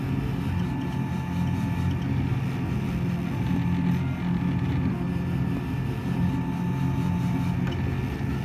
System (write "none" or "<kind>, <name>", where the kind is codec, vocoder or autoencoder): none